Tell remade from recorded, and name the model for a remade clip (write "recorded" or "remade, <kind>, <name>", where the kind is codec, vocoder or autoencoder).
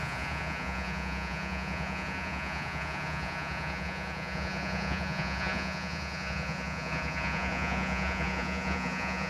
remade, vocoder, Vocos